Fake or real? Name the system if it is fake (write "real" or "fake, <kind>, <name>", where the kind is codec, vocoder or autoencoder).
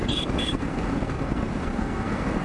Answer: fake, codec, SNAC